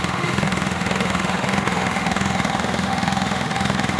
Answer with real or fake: fake